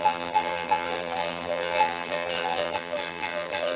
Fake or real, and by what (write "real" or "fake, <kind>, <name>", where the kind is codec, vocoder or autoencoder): fake, vocoder, BigVGAN v2